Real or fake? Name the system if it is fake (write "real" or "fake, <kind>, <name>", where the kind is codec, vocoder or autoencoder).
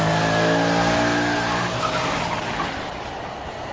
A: real